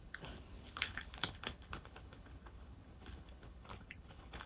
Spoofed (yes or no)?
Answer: yes